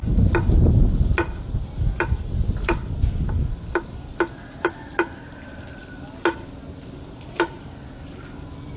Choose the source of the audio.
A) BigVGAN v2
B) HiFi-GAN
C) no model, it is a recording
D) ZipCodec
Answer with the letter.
C